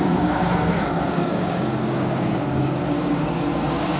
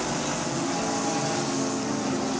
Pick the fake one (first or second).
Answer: first